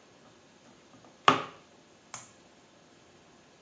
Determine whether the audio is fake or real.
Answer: real